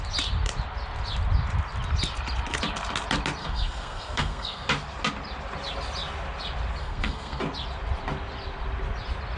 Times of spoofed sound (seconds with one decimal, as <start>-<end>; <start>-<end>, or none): 3.4-4.7; 6.8-7.4